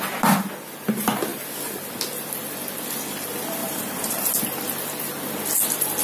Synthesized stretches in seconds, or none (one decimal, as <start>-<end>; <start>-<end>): 3.6-4.2